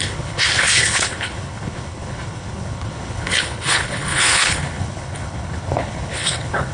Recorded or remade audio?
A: remade